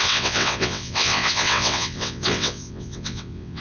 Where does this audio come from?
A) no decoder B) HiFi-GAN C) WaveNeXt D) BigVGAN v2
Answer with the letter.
C